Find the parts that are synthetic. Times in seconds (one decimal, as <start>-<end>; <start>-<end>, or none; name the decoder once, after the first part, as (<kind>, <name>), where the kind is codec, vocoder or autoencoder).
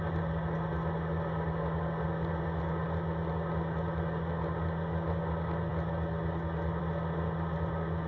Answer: none